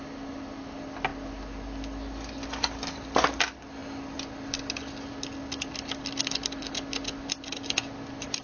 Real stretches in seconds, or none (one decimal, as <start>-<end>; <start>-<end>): 0.0-8.4